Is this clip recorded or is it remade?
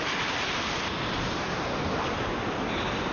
recorded